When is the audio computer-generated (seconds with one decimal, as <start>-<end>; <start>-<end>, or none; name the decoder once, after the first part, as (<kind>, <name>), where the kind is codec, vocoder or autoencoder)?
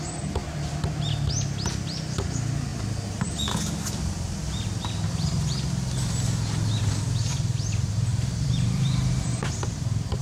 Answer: 8.1-9.5 (vocoder, BigVGAN v2)